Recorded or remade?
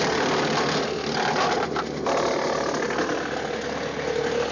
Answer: recorded